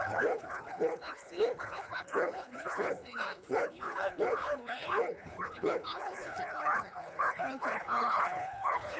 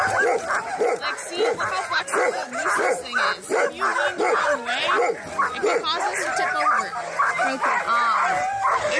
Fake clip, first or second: first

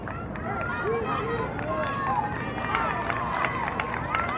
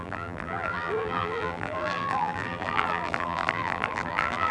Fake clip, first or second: second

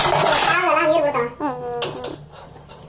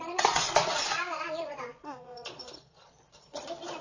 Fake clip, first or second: second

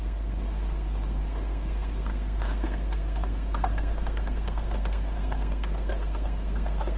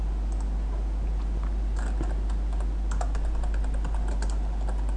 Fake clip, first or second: first